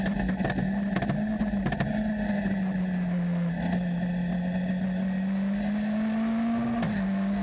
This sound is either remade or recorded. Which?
recorded